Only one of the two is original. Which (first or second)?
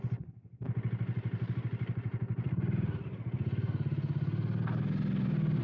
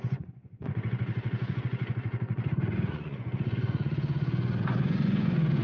first